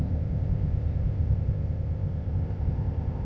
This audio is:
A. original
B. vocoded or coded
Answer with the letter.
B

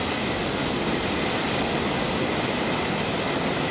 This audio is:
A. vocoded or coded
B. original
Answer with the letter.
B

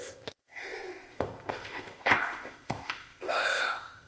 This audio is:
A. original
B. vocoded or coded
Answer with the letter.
B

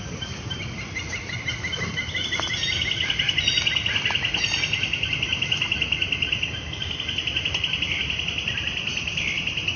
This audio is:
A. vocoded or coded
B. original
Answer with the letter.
B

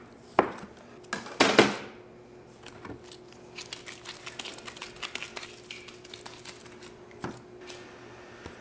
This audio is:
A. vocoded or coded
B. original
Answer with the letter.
B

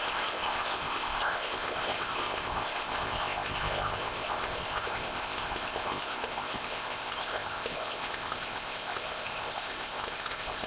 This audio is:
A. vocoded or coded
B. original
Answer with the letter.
A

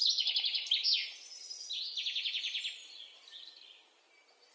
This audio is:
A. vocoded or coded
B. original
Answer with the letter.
B